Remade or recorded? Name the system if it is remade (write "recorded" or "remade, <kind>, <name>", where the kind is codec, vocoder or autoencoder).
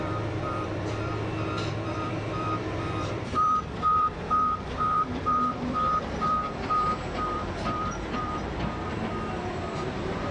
remade, vocoder, BigVGAN v2